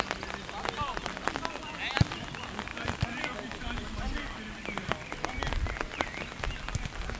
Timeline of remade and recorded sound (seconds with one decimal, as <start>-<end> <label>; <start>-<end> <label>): 0.0-7.2 recorded